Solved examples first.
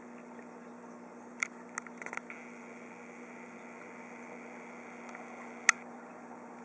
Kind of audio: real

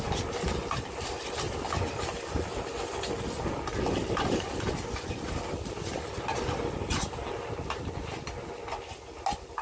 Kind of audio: real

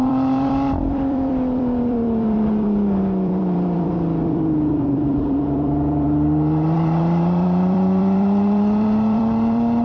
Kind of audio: fake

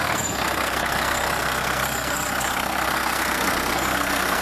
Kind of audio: fake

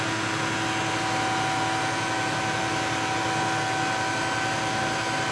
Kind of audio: real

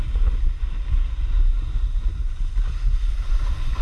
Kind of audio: real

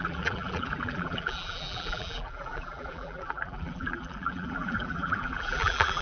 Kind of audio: fake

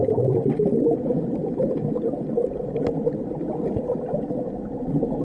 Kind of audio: real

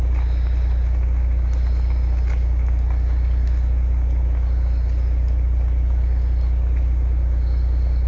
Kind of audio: real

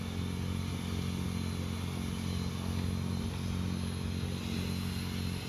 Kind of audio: real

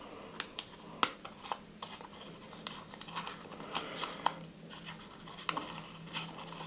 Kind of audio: real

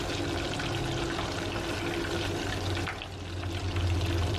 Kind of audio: real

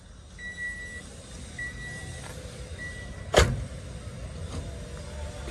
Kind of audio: real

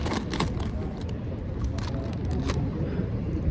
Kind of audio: real